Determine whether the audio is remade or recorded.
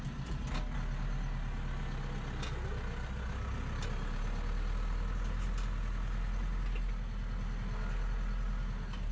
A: recorded